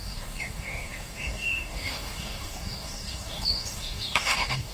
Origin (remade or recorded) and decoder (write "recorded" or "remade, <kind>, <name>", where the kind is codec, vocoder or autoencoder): remade, codec, DAC